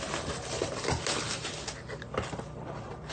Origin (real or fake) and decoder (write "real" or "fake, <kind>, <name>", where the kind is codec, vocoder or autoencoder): fake, vocoder, BigVGAN v2